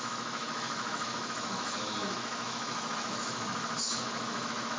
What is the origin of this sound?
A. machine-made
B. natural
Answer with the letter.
A